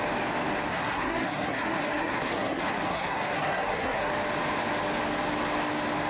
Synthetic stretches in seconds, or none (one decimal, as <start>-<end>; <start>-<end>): 0.7-4.1